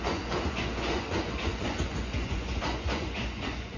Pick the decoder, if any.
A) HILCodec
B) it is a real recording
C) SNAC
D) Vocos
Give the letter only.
D